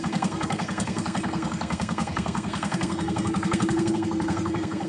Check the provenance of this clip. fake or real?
fake